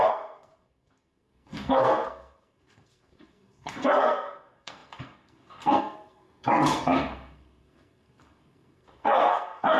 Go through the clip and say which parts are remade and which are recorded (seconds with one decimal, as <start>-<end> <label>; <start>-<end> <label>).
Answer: 0.0-9.8 remade